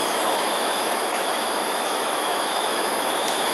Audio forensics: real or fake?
fake